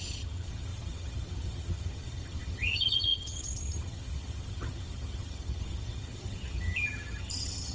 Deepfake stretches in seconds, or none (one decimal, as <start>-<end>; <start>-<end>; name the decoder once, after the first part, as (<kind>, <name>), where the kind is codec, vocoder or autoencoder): 0.0-7.7 (vocoder, HiFi-GAN)